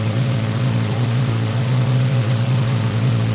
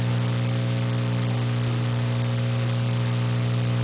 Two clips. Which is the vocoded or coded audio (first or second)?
first